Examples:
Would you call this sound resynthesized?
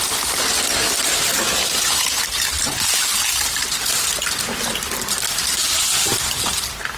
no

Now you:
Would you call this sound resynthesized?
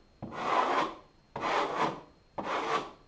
no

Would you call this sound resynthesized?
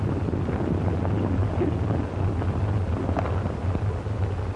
no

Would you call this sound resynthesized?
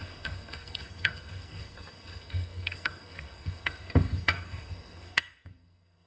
yes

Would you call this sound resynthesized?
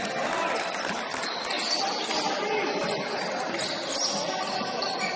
no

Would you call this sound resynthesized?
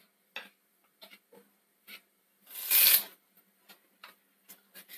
no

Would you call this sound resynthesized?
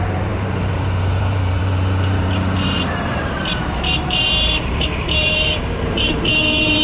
yes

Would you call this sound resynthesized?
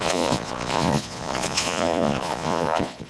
yes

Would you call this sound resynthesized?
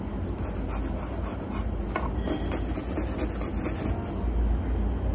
no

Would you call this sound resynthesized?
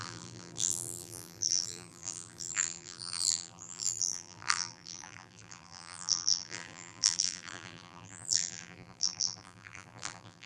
yes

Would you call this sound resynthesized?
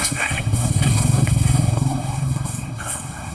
yes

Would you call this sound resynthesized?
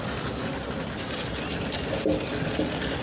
no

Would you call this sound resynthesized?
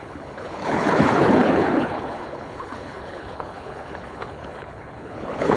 yes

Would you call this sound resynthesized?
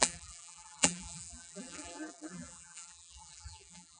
yes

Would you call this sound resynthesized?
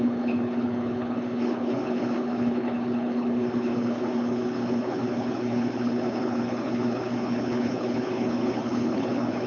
yes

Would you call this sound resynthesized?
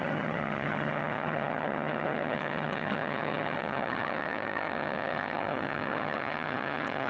yes